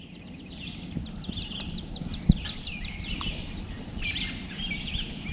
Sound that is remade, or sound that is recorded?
recorded